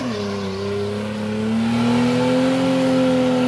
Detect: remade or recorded recorded